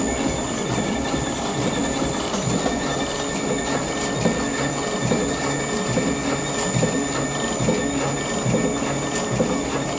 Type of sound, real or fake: real